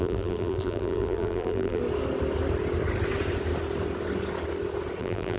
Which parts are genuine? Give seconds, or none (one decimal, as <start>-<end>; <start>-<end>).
1.8-5.0